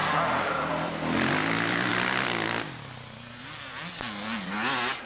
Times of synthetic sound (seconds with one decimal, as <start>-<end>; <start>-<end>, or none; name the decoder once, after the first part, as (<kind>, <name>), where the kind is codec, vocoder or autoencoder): none